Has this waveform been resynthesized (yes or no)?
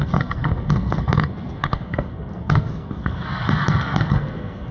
yes